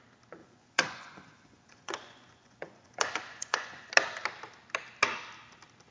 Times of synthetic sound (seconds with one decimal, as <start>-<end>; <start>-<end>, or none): 0.4-3.9